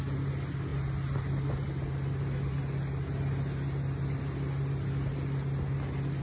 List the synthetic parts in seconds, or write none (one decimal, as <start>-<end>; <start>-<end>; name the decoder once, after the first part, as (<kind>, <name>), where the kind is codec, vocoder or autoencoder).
none